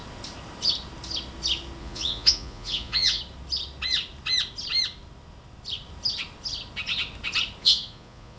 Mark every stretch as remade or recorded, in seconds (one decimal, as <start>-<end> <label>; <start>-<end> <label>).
0.0-1.8 recorded; 1.8-3.2 remade; 3.2-7.6 recorded; 7.6-8.4 remade